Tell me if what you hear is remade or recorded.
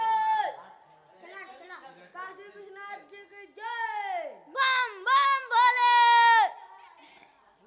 recorded